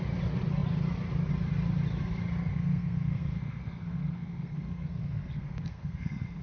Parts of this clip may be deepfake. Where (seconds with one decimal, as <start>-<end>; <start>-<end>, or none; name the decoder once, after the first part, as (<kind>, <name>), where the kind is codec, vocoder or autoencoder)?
2.5-6.4 (codec, SNAC)